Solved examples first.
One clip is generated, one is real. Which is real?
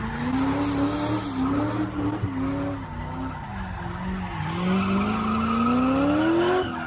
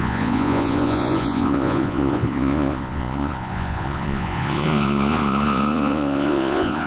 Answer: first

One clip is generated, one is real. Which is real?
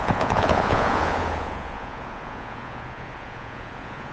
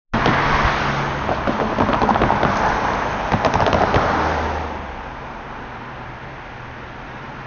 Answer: second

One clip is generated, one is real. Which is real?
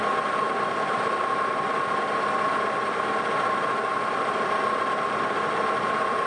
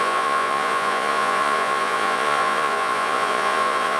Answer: first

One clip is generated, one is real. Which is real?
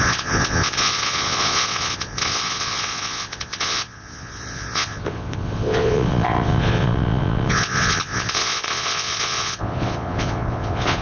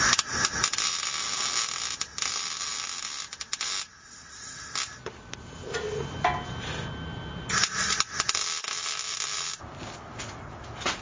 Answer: second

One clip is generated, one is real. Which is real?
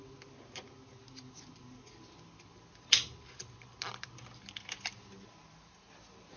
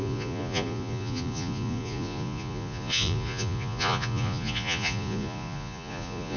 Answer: first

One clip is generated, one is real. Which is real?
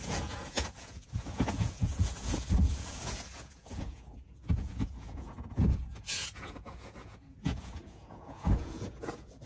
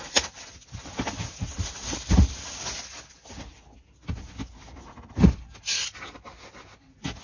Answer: second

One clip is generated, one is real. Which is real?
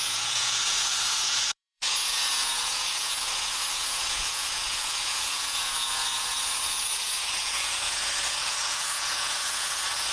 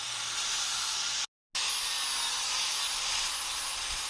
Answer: second